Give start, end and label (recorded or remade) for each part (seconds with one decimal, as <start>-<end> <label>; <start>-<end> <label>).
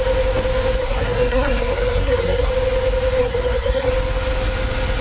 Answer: 0.0-0.8 recorded; 0.8-2.5 remade; 2.5-3.2 recorded; 3.2-3.9 remade; 3.9-5.0 recorded